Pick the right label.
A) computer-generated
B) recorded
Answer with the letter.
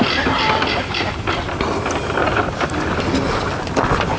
B